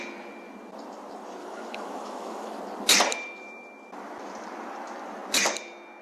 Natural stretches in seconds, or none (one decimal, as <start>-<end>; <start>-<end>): 0.0-1.4; 2.6-6.0